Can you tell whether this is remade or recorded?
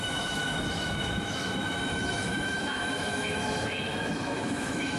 remade